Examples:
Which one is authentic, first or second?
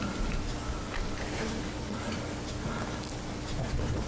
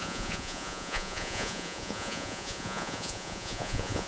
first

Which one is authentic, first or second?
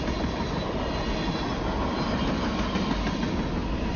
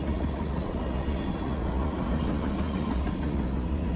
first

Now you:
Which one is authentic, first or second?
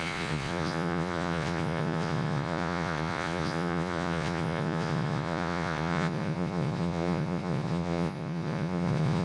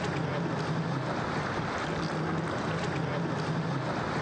second